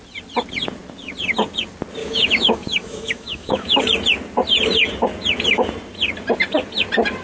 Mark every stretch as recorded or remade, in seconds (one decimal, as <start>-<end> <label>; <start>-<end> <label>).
0.0-2.0 recorded; 2.0-3.8 remade; 3.8-7.2 recorded